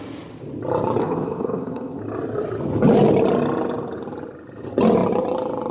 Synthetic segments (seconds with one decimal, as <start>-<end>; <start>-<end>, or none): 1.0-2.0